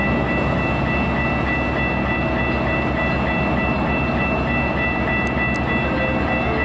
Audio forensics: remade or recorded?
recorded